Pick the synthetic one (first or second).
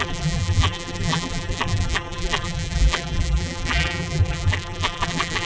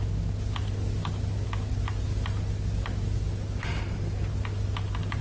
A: first